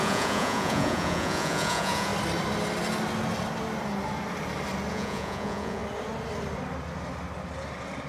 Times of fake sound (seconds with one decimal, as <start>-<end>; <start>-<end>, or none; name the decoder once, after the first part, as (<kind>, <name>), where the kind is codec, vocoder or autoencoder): 0.0-2.1 (vocoder, Vocos); 4.9-5.8